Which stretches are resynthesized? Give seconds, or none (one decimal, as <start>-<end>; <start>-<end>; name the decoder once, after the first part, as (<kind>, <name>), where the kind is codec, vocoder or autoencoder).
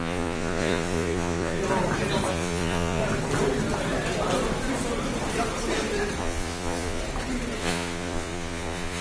0.0-1.6 (vocoder, Vocos); 2.3-3.0; 6.2-7.0; 7.6-9.0